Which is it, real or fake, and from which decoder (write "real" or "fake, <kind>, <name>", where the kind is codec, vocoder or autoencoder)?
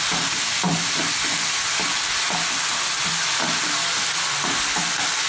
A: real